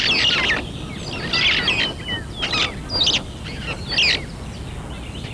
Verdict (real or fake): real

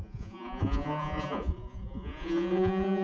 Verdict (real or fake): fake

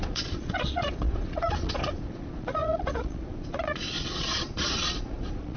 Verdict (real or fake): fake